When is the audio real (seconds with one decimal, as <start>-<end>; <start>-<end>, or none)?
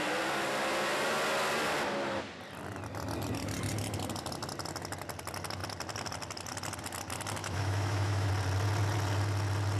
0.0-7.4; 8.3-9.8